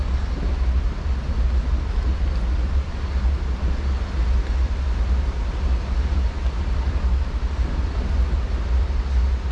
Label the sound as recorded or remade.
recorded